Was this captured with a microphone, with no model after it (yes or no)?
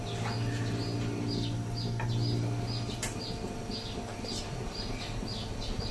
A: yes